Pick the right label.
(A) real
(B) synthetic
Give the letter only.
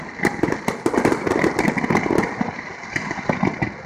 A